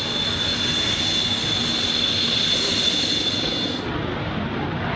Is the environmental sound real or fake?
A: real